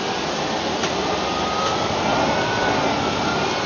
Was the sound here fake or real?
real